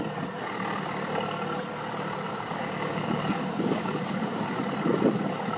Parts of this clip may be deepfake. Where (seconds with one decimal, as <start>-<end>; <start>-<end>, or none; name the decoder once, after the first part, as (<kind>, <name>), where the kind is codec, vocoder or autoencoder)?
2.3-4.4 (codec, DAC)